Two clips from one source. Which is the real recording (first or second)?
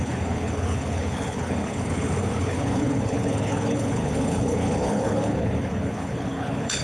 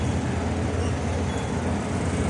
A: second